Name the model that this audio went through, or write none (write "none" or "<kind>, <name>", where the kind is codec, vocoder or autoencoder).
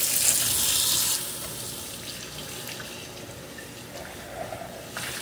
none